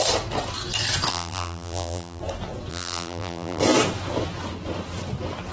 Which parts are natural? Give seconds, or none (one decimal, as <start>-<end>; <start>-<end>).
0.0-1.1; 2.2-2.7; 3.6-5.5